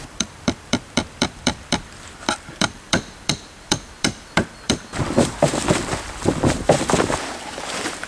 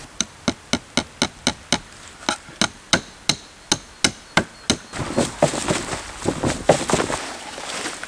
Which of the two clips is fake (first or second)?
first